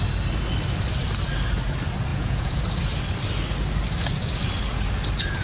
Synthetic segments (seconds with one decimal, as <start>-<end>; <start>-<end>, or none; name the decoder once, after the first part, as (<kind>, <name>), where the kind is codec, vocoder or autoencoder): 2.1-2.6 (vocoder, Vocos)